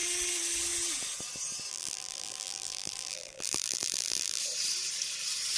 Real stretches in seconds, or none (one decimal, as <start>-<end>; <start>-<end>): 0.0-1.7; 4.4-5.6